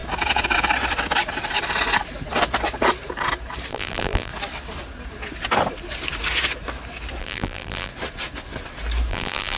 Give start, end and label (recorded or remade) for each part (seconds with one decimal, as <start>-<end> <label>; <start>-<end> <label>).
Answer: 0.0-3.7 recorded; 3.7-4.3 remade; 4.3-7.2 recorded; 7.2-7.9 remade; 7.9-9.1 recorded; 9.1-9.6 remade